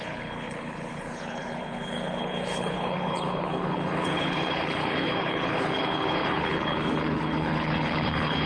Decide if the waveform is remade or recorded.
remade